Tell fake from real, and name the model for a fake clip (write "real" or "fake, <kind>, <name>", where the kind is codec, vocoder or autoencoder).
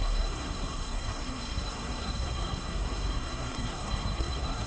fake, codec, SNAC